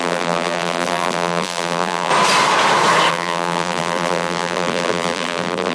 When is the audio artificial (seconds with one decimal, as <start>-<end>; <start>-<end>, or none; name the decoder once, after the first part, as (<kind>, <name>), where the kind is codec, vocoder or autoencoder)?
0.0-2.1 (vocoder, BigVGAN v2); 3.1-5.7